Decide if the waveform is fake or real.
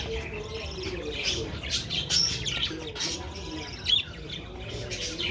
real